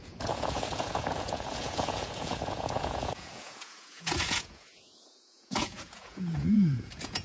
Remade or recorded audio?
remade